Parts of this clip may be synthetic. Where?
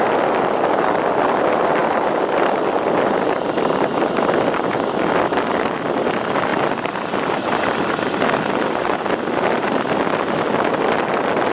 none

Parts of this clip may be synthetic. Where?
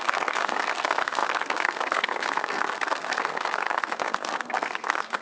0.0-5.2 (codec, SNAC)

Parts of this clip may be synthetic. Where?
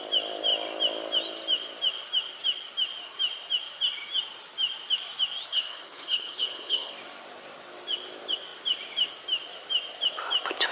5.5-6.9 (codec, HILCodec)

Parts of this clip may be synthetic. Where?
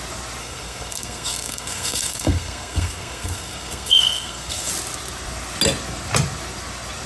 0.4-4.7 (codec, SNAC)